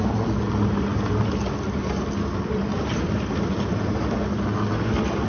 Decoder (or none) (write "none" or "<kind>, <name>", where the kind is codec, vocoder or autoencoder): none